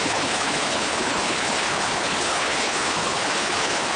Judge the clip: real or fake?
fake